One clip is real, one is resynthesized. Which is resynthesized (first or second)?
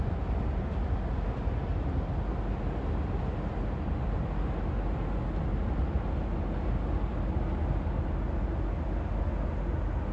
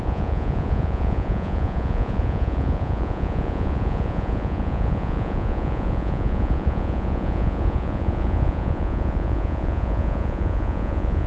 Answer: second